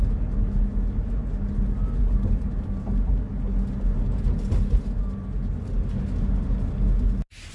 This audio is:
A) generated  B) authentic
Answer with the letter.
B